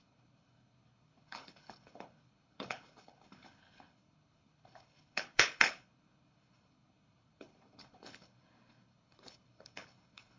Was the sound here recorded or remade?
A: remade